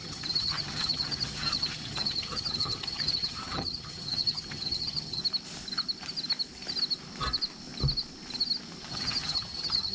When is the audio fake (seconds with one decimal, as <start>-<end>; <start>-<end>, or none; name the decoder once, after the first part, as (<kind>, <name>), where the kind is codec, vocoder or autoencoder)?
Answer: 0.0-5.2 (vocoder, HiFi-GAN); 8.9-9.9